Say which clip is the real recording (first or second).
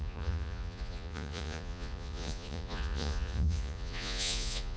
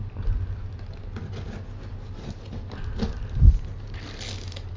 second